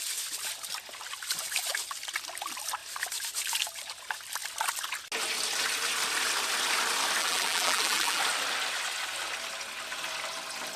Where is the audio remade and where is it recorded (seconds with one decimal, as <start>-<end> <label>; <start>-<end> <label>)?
0.0-7.2 recorded; 7.2-8.2 remade; 8.2-10.8 recorded